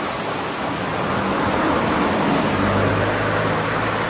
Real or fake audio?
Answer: real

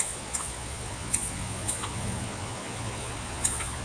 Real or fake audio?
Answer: fake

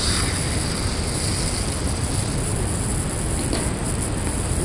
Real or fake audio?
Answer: real